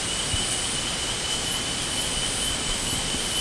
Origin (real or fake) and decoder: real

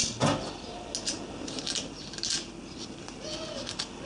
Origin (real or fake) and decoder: real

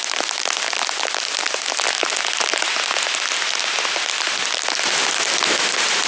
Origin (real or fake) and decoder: real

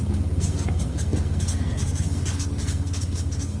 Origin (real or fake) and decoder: fake, codec, SNAC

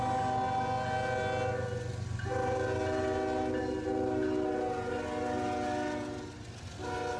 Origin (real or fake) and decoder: real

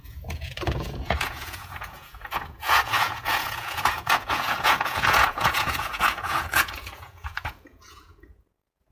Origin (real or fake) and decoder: fake, vocoder, Vocos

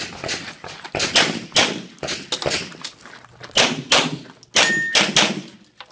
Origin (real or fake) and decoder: real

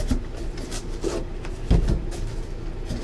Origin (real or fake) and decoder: real